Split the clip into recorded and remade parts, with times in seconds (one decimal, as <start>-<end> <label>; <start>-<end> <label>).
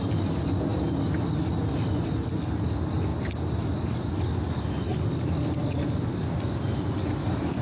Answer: 0.0-3.1 recorded; 3.1-4.2 remade; 4.2-7.6 recorded